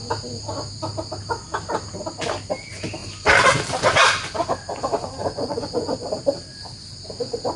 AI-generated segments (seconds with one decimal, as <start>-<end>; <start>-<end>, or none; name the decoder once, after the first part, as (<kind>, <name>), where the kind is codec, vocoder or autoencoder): 5.2-5.9 (vocoder, Vocos)